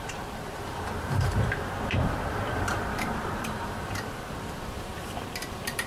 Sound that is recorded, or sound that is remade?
remade